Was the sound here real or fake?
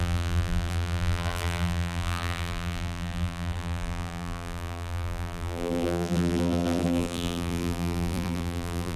fake